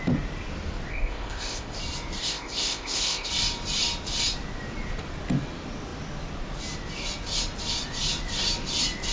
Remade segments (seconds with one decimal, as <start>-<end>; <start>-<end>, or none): 0.9-1.8; 2.2-3.3